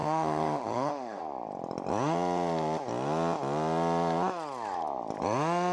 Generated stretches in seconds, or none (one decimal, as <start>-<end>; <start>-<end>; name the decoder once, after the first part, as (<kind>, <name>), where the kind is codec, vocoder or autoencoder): 0.0-1.2 (autoencoder, DAC-VAE)